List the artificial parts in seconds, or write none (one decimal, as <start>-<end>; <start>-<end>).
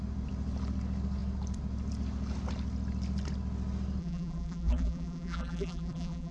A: 4.0-6.3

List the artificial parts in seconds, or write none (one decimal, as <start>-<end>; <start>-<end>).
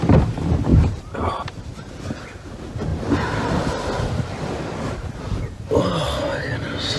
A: 0.7-2.0; 2.9-4.0; 5.3-5.9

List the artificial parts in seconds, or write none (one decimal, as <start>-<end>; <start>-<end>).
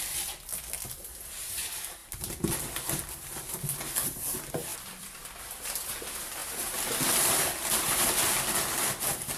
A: 2.0-2.8; 4.7-5.9; 6.4-8.1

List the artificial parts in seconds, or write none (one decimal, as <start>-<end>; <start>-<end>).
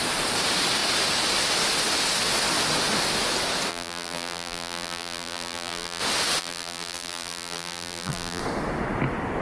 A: 3.7-6.0; 6.4-8.4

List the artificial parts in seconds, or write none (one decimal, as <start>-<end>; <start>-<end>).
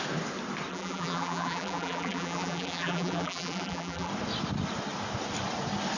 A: 0.7-4.1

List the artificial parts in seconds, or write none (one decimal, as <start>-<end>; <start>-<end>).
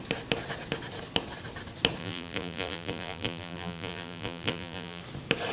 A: 2.0-5.0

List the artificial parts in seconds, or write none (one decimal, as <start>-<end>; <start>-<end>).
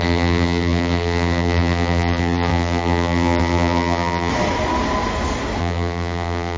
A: 0.0-4.3; 5.6-6.6